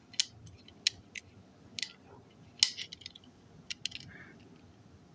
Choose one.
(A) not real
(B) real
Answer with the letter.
B